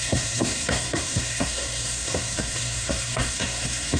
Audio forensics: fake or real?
fake